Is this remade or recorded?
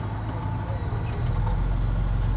recorded